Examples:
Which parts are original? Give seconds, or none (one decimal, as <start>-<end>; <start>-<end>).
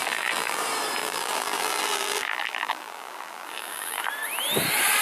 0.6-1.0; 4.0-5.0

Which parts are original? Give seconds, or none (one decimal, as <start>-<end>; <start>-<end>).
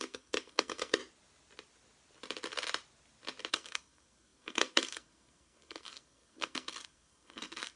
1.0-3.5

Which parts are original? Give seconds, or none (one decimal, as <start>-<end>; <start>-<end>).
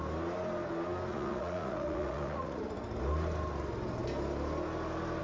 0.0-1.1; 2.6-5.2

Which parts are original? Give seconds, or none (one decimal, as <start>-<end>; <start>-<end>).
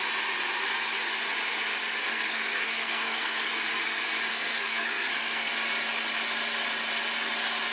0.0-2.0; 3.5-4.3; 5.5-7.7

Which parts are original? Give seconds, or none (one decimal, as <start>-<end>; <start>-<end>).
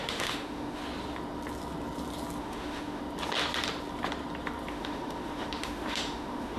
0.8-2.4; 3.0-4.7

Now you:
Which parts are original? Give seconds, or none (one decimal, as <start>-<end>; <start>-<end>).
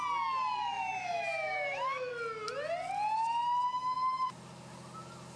0.0-0.6; 2.1-3.7; 4.3-5.4